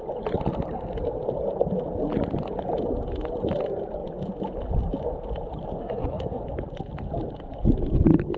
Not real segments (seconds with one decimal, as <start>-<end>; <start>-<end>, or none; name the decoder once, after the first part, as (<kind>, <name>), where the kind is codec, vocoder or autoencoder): 5.8-6.4 (codec, SNAC)